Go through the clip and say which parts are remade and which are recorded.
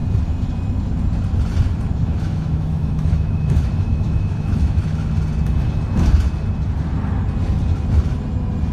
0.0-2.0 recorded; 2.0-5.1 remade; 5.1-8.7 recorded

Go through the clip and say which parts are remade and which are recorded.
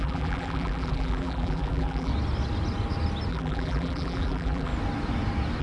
0.0-2.1 remade; 2.1-3.3 recorded; 3.3-4.7 remade; 4.7-5.6 recorded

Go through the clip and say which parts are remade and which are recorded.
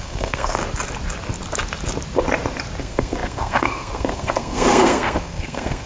0.0-0.6 remade; 0.6-2.8 recorded; 2.8-5.9 remade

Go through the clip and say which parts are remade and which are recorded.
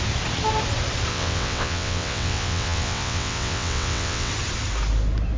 0.0-1.1 recorded; 1.1-4.3 remade; 4.3-5.4 recorded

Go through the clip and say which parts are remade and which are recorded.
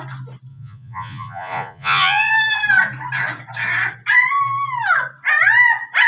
0.0-0.5 recorded; 0.5-2.3 remade; 2.3-6.1 recorded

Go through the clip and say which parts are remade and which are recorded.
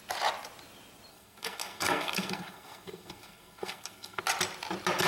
0.0-1.1 recorded; 1.1-4.2 remade; 4.2-5.1 recorded